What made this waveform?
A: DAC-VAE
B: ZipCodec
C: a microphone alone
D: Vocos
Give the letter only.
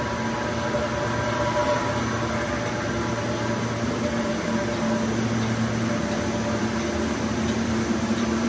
C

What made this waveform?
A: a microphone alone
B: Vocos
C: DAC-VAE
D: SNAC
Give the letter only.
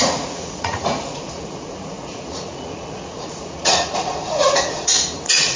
B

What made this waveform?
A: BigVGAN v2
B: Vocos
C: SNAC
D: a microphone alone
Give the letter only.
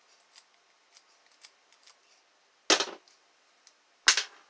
D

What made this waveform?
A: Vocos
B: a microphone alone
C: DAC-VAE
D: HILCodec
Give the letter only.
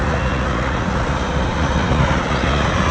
A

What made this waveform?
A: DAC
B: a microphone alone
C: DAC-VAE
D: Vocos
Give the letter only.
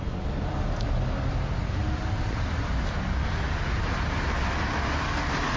B